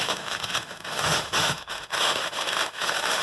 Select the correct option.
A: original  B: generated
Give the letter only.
B